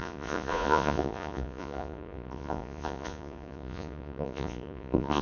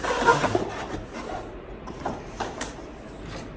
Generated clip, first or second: first